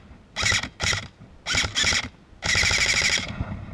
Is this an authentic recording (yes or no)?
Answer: yes